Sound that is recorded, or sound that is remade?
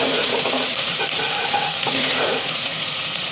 remade